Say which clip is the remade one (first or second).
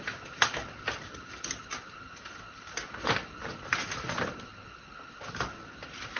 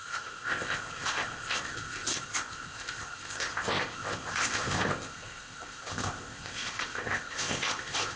second